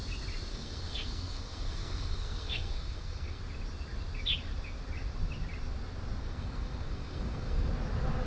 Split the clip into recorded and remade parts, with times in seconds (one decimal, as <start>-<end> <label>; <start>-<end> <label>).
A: 0.0-0.5 recorded; 0.5-3.4 remade; 3.4-6.2 recorded; 6.2-7.7 remade; 7.7-8.3 recorded